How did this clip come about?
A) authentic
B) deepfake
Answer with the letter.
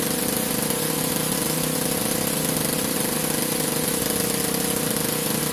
A